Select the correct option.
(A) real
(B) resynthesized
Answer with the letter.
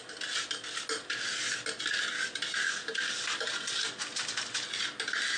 A